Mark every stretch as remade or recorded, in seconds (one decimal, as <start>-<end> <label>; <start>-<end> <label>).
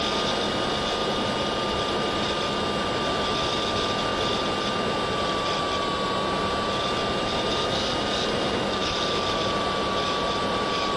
0.0-1.0 recorded; 1.0-2.6 remade; 2.6-4.1 recorded; 4.1-4.8 remade; 4.8-8.8 recorded; 8.8-11.0 remade